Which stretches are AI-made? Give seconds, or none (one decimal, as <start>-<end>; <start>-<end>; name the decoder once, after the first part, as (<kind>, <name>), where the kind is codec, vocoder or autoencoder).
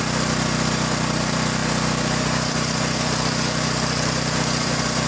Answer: 0.0-1.6 (vocoder, BigVGAN v2); 2.5-5.1